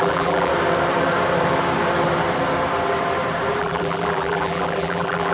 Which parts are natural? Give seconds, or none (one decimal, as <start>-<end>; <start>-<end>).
0.5-3.6